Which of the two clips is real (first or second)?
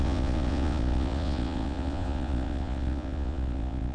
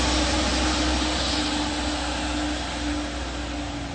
second